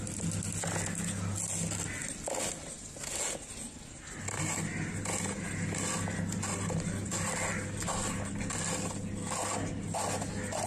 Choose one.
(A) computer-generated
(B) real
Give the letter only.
B